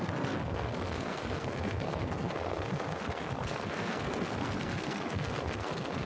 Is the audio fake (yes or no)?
yes